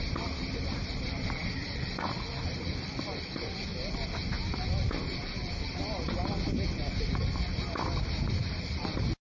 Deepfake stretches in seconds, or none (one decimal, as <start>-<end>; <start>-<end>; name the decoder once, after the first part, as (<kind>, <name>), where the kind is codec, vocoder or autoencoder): 0.0-3.7 (vocoder, BigVGAN v2); 4.4-6.0; 8.4-9.3